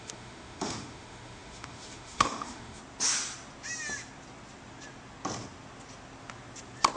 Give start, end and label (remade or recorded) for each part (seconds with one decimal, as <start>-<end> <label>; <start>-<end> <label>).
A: 0.0-2.8 remade; 2.8-7.0 recorded